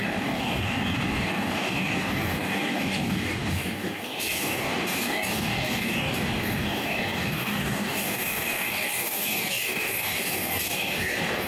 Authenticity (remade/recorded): remade